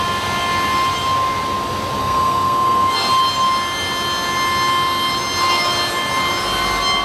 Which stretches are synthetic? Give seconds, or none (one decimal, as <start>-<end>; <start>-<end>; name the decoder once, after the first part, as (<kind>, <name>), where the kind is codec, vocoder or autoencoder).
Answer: 2.0-3.1 (codec, SNAC)